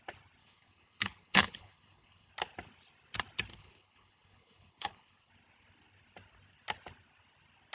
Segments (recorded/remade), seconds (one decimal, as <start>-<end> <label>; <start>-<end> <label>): 0.0-0.4 recorded; 0.4-2.3 remade; 2.3-3.5 recorded; 3.5-5.3 remade; 5.3-7.7 recorded